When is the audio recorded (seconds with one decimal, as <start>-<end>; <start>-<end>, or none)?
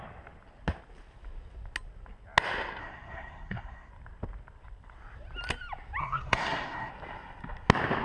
0.0-2.8; 3.9-6.0; 6.9-8.0